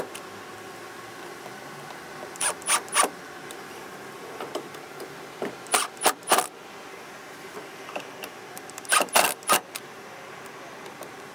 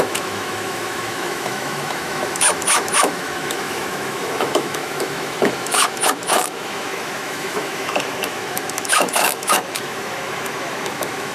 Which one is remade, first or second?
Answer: second